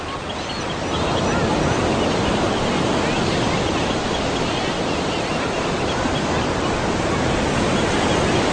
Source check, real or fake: real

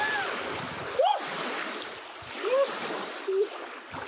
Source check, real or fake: real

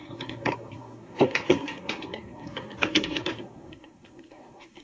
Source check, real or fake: fake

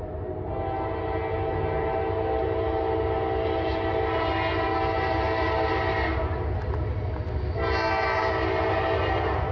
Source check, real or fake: real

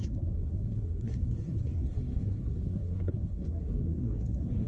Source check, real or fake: fake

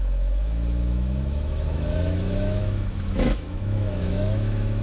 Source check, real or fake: fake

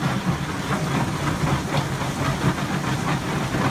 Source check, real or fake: real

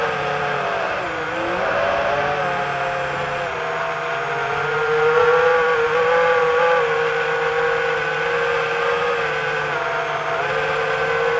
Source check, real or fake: real